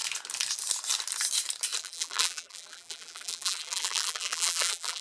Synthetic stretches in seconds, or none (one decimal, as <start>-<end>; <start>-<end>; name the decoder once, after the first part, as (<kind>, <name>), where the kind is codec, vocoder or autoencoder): 1.8-5.0 (vocoder, BigVGAN v2)